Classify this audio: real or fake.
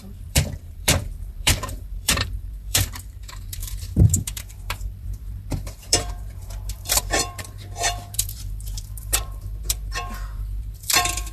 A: fake